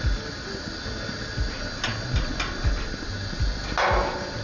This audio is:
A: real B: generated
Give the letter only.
A